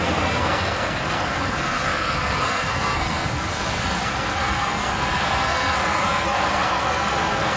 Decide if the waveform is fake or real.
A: fake